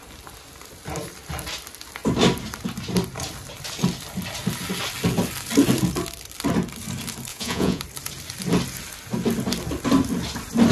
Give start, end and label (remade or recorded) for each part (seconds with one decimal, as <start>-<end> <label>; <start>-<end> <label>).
0.0-7.3 recorded; 7.3-7.8 remade; 7.8-10.7 recorded

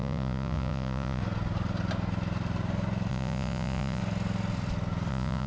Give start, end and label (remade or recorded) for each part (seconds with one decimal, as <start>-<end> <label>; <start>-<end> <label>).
0.0-1.2 remade; 1.2-3.1 recorded; 3.1-4.0 remade; 4.0-5.1 recorded; 5.1-5.5 remade